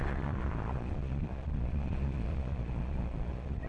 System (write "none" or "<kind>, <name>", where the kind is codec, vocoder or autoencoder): vocoder, Vocos